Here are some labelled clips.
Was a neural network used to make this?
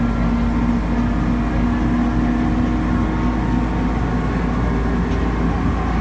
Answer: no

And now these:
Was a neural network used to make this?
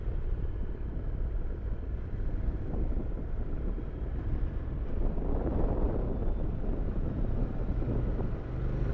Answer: yes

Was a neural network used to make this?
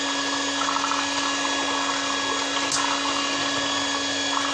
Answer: no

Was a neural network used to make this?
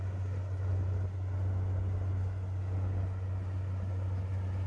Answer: no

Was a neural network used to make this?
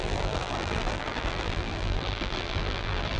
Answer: yes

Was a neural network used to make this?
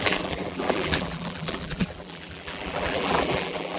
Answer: yes